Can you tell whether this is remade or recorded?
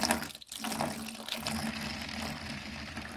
recorded